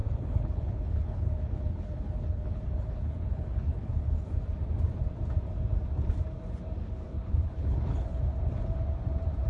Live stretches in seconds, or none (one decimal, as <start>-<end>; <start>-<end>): 4.4-6.8; 8.2-9.5